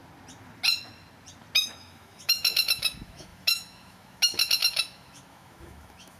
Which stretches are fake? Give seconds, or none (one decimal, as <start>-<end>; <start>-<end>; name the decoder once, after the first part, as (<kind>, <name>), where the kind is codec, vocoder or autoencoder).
1.6-6.2 (autoencoder, DAC-VAE)